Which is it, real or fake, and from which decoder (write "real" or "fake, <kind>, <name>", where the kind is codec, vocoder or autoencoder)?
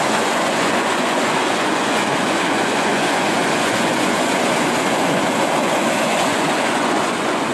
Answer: fake, vocoder, Vocos